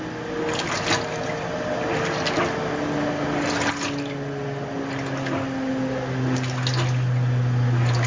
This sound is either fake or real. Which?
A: real